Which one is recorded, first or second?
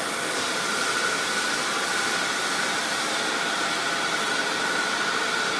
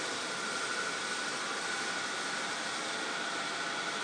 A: second